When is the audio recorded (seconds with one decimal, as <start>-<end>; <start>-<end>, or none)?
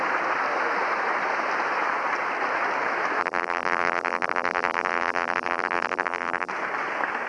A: 0.0-3.2; 6.5-7.3